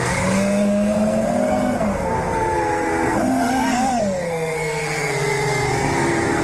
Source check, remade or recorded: remade